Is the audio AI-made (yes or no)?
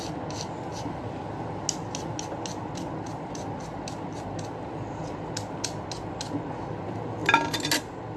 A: no